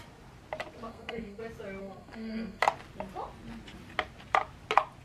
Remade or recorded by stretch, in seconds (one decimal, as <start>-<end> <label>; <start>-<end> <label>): 0.0-0.9 recorded; 0.9-1.4 remade; 1.4-1.8 recorded; 1.8-2.6 remade; 2.6-5.0 recorded